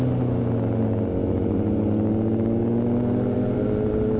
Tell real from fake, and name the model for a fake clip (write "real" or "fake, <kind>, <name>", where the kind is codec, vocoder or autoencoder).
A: real